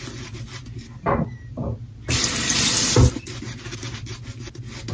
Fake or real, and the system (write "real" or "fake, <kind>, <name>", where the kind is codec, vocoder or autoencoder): real